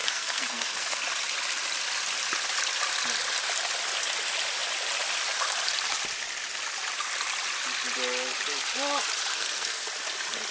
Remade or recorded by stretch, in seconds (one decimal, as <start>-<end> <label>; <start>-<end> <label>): 0.0-1.0 remade; 1.0-9.3 recorded; 9.3-9.9 remade; 9.9-10.5 recorded